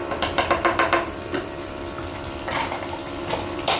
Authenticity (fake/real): fake